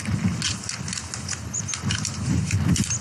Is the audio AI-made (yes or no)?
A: no